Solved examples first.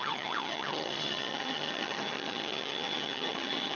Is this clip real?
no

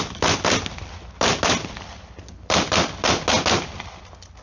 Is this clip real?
yes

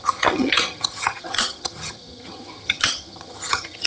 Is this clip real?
no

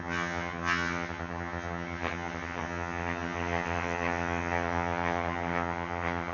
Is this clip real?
no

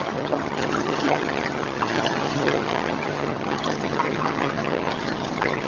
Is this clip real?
no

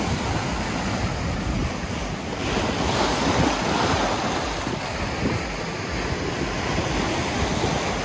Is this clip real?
yes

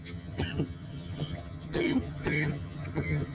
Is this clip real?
no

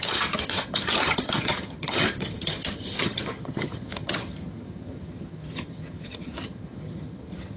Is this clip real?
no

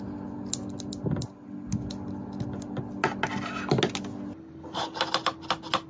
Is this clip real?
yes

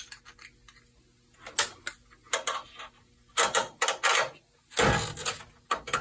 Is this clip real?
yes